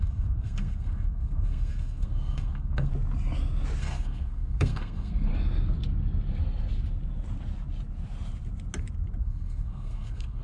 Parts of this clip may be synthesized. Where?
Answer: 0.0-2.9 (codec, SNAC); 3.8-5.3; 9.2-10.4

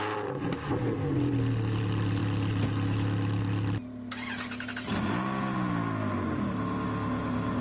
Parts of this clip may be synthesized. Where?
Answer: none

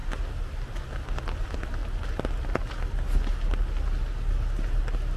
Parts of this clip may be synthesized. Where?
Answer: none